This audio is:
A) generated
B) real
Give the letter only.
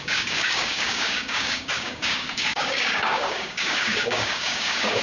A